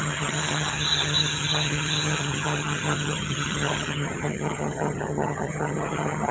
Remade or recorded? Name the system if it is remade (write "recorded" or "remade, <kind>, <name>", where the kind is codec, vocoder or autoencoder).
remade, vocoder, HiFi-GAN